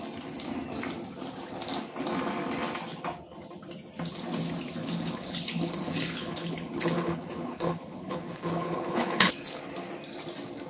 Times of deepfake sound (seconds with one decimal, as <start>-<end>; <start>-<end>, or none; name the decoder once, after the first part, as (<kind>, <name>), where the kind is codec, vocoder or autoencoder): 4.8-9.6 (codec, HILCodec)